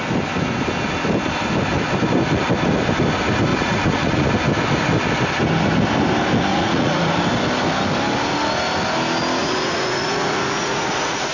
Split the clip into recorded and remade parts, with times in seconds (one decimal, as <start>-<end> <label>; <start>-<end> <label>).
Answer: 0.0-3.5 recorded; 3.5-4.3 remade; 4.3-6.5 recorded; 6.5-7.1 remade; 7.1-9.4 recorded; 9.4-11.3 remade